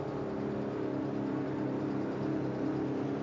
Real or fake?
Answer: real